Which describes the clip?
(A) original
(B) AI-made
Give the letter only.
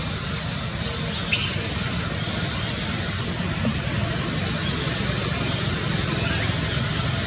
A